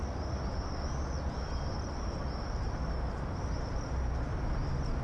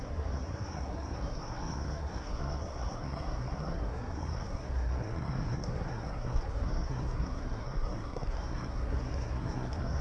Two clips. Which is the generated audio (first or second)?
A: second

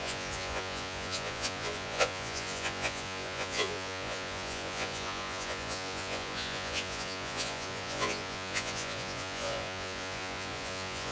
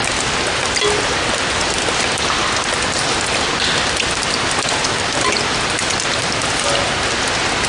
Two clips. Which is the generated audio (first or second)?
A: first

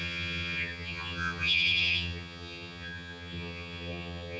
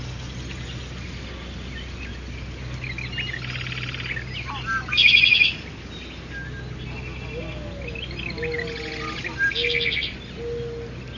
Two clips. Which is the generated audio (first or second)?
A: first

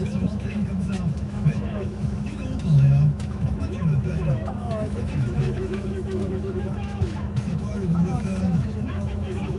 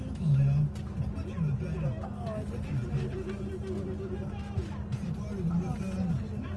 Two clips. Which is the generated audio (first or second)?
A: first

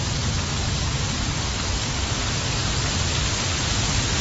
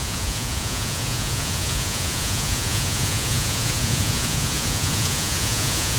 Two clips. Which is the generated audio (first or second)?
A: second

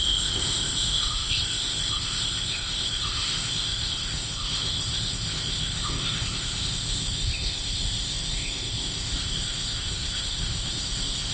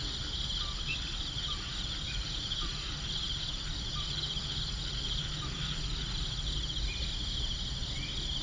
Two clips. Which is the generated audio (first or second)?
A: first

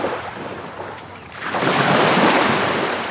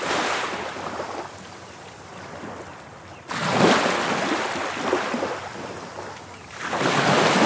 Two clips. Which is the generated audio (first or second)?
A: first